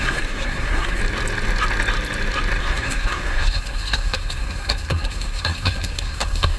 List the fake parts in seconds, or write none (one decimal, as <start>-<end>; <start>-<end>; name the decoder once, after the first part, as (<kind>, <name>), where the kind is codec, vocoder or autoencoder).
0.0-1.0 (codec, SNAC); 2.6-6.6